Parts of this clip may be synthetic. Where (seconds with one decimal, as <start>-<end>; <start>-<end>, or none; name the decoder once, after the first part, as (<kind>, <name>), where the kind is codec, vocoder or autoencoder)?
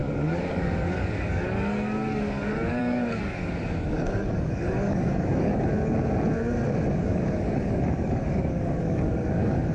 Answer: 0.0-5.7 (codec, DAC); 7.0-9.7